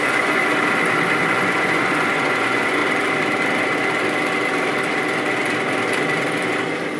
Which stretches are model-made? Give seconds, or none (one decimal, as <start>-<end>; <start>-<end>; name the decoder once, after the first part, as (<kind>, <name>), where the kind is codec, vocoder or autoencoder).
0.0-0.4 (vocoder, Vocos); 1.2-2.8